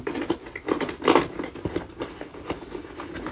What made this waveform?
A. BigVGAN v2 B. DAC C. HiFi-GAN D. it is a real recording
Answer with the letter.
D